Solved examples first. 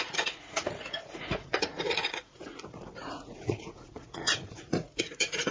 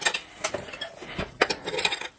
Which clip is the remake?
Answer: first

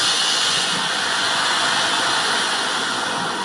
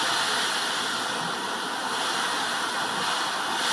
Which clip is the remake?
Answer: first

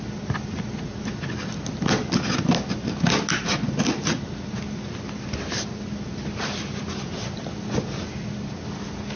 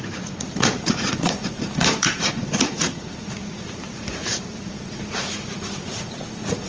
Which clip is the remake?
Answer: second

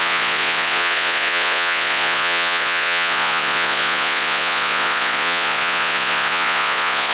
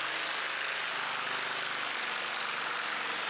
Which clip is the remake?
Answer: first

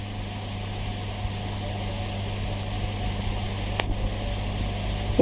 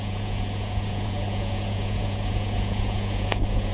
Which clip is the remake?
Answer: second